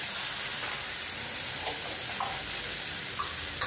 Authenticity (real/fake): real